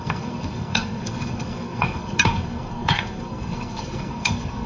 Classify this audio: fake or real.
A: fake